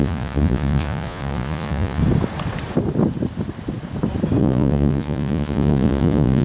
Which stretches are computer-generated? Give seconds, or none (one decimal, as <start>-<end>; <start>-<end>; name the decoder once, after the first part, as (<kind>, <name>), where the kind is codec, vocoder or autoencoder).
0.0-2.0 (vocoder, Vocos); 4.4-6.4

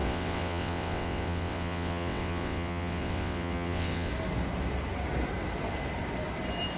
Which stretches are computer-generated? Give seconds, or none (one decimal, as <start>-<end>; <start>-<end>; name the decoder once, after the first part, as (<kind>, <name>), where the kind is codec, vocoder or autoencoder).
0.0-4.1 (vocoder, WaveNeXt)

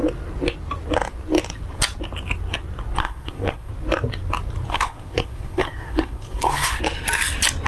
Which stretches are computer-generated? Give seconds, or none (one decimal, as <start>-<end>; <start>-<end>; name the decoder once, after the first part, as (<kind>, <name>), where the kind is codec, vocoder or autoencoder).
3.0-3.7 (codec, SNAC); 4.7-6.8

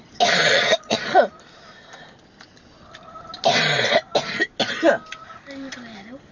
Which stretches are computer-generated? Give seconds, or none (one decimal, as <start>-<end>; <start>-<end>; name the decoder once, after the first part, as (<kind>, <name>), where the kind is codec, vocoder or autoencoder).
0.4-1.3 (vocoder, Vocos)

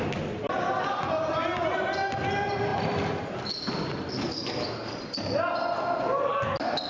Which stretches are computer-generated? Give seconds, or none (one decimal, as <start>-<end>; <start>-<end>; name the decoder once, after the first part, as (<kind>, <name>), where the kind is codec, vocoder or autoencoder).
2.7-3.7 (vocoder, BigVGAN v2)

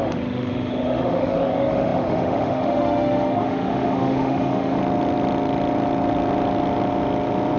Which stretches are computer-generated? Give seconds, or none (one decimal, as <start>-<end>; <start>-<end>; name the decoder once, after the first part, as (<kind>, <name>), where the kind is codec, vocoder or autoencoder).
0.0-4.8 (autoencoder, DAC-VAE)